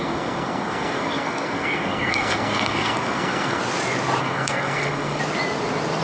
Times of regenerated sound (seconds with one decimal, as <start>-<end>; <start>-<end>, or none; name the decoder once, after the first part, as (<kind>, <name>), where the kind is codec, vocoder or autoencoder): 0.0-3.6 (codec, SNAC); 4.2-5.2